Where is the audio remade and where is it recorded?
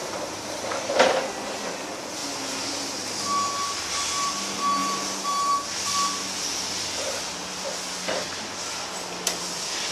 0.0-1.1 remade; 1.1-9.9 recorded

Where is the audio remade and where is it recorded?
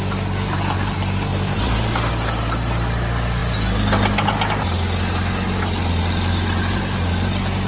0.0-1.3 recorded; 1.3-2.1 remade; 2.1-7.7 recorded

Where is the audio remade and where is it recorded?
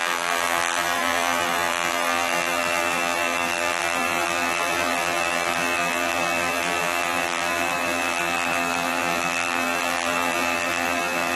0.0-11.4 remade